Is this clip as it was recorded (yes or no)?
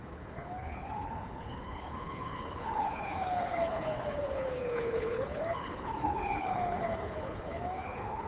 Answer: no